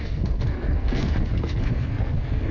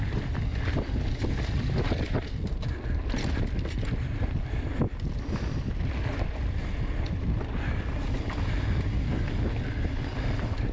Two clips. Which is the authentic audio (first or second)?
second